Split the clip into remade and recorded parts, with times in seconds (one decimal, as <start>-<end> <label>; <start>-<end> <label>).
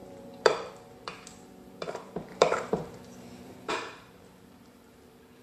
0.0-5.4 remade